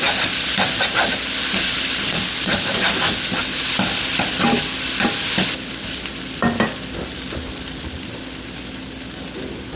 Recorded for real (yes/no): yes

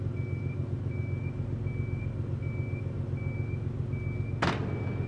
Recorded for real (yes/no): yes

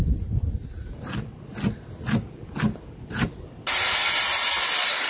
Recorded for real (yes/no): yes